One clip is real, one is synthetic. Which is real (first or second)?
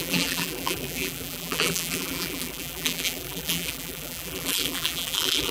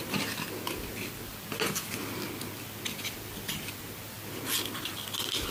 second